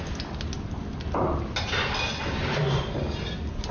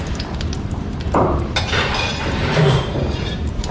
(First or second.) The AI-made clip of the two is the second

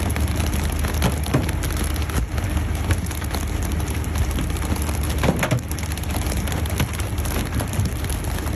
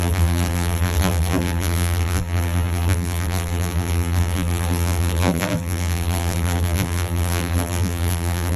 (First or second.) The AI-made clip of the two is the second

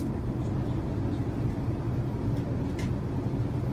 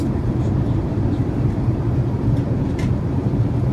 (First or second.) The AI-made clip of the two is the second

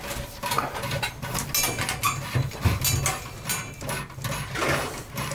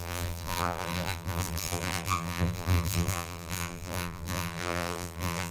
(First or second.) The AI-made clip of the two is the second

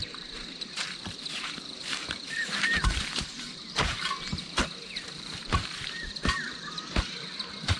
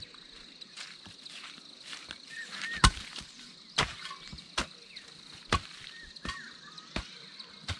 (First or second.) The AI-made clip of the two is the first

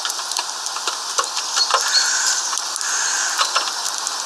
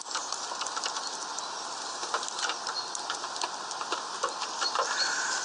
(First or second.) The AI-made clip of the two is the second